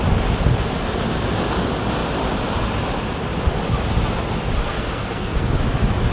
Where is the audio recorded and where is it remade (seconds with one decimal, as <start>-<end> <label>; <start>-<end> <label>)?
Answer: 0.0-4.6 recorded; 4.6-5.5 remade; 5.5-6.1 recorded